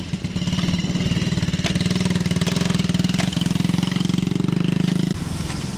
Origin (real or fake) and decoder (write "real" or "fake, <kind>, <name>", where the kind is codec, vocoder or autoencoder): real